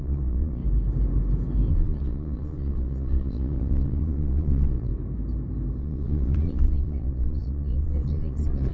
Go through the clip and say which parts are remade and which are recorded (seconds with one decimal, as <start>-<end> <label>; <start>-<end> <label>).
0.0-0.6 remade; 0.6-1.7 recorded; 1.7-4.9 remade; 4.9-5.8 recorded; 5.8-8.7 remade